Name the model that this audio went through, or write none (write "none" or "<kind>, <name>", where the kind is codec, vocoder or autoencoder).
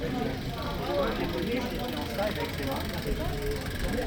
none